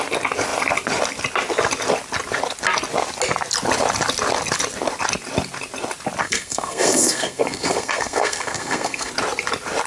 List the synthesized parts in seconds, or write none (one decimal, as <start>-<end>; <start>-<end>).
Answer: 6.2-9.1